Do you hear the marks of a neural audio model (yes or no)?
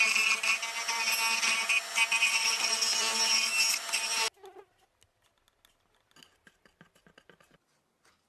no